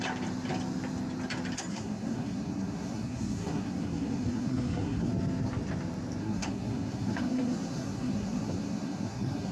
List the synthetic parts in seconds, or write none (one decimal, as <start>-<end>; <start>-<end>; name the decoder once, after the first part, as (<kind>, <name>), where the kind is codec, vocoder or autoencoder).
1.7-5.1 (codec, SNAC); 6.2-9.5